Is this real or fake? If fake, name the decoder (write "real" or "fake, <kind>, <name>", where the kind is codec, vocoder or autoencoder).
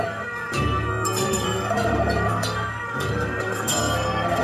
fake, codec, SNAC